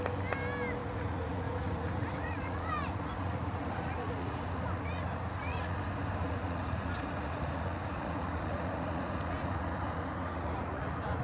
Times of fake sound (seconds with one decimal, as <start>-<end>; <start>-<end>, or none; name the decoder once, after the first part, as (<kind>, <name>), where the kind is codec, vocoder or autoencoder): 0.8-5.8 (vocoder, Vocos); 6.2-11.2